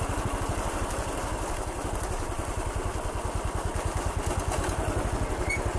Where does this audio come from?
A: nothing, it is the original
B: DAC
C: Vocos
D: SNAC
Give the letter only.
A